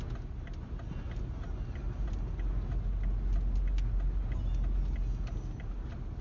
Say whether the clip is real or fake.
real